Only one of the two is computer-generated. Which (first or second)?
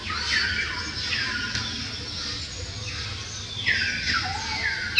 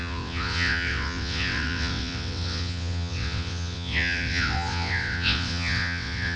second